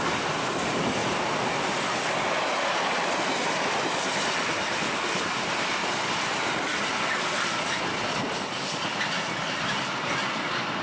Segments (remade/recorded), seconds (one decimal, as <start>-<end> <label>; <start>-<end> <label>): 0.0-10.8 recorded